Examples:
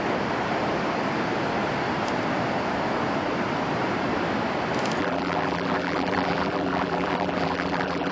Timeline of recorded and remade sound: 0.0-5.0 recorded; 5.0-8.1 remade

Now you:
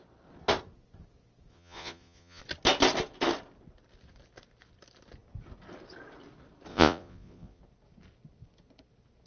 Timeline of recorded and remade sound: 0.0-1.5 recorded; 1.5-2.4 remade; 2.4-6.7 recorded; 6.7-7.6 remade; 7.6-9.3 recorded

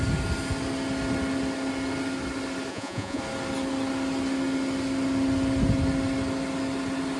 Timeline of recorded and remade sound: 0.0-2.7 recorded; 2.7-3.2 remade; 3.2-7.2 recorded

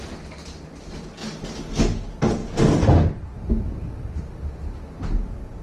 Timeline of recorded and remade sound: 0.0-5.6 recorded

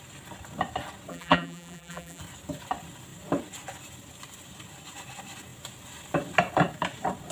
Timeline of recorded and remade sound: 0.0-1.1 recorded; 1.1-2.2 remade; 2.2-7.3 recorded

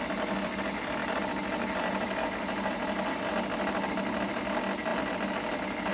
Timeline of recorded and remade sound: 0.0-1.0 recorded; 1.0-3.2 remade; 3.2-5.9 recorded